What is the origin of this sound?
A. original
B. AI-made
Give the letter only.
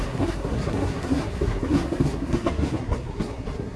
B